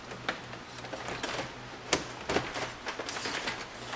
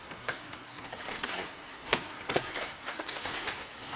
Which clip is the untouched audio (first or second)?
first